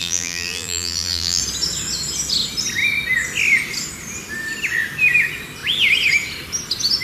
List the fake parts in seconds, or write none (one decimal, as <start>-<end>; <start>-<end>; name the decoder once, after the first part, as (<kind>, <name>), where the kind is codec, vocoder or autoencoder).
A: 0.0-1.4 (vocoder, BigVGAN v2)